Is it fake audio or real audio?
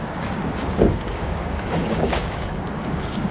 fake